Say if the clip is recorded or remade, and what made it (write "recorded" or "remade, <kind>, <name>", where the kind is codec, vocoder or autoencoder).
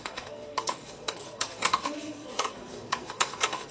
remade, codec, SNAC